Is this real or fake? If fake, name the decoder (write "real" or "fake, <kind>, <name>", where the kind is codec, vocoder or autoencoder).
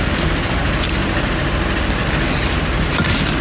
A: real